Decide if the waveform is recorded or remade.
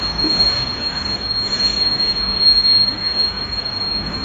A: remade